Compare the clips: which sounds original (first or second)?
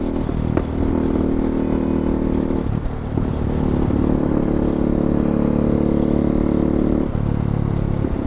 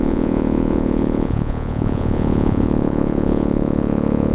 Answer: first